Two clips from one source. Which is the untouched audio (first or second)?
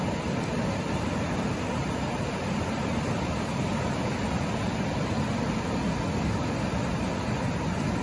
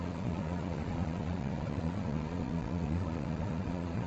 first